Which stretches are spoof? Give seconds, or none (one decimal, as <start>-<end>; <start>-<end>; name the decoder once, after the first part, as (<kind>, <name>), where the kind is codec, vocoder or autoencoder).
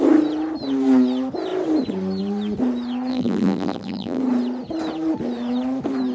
3.1-4.2 (vocoder, BigVGAN v2)